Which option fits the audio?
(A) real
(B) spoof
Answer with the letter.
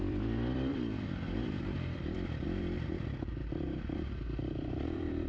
B